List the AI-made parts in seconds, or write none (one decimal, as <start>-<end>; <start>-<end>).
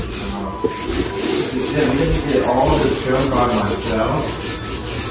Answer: none